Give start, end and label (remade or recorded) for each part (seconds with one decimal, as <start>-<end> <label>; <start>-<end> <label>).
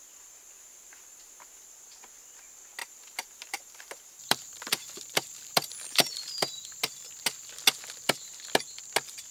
0.0-2.8 recorded; 2.8-6.1 remade; 6.1-9.3 recorded